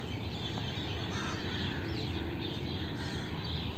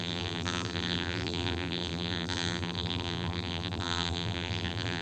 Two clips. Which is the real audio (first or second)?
first